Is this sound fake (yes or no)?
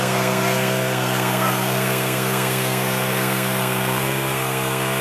yes